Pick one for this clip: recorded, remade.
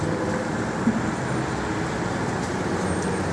recorded